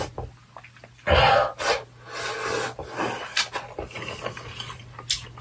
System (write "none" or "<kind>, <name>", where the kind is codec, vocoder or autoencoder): none